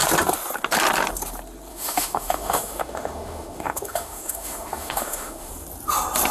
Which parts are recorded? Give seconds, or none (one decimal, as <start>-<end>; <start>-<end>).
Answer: 0.0-1.7; 5.5-6.3

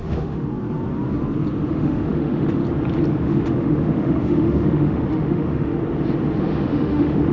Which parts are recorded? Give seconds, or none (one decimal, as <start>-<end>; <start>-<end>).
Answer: 0.5-1.7; 2.6-3.2; 5.8-6.4

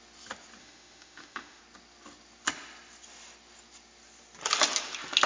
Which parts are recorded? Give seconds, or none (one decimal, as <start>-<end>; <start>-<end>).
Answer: 0.0-0.6; 1.6-5.3

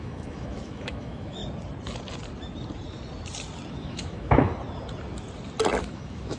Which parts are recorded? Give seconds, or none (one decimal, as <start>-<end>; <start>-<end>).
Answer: 1.4-3.7; 4.5-5.8

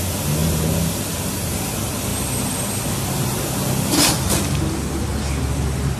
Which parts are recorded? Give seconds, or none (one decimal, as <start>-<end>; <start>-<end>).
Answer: 0.0-6.0

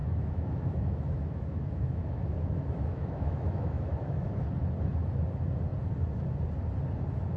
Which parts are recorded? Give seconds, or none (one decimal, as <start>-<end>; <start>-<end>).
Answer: 4.4-7.4

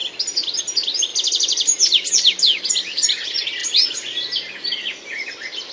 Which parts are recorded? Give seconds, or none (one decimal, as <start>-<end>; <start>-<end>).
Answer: 0.0-5.7

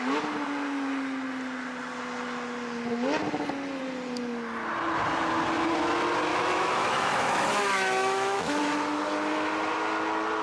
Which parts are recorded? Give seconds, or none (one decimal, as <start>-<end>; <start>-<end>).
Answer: 0.0-6.3; 8.6-10.4